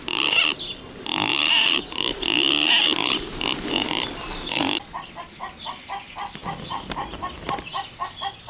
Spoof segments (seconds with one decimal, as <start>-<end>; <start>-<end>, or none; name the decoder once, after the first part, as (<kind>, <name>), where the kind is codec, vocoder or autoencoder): 0.0-8.5 (vocoder, BigVGAN v2)